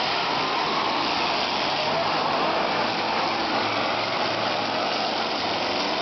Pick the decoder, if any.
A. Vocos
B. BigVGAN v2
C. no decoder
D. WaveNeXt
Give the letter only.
C